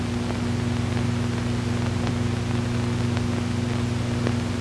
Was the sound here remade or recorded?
recorded